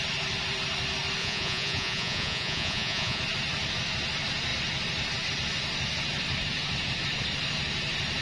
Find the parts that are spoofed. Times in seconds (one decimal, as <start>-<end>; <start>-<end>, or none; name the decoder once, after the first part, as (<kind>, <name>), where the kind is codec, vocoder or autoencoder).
1.2-3.2 (vocoder, Vocos)